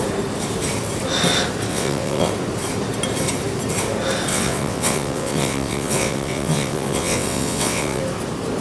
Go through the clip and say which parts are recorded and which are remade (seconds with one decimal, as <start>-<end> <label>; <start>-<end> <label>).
0.0-1.7 recorded; 1.7-2.3 remade; 2.3-4.3 recorded; 4.3-8.0 remade; 8.0-8.6 recorded